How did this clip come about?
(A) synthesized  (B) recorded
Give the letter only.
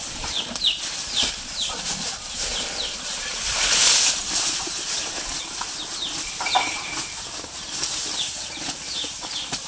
B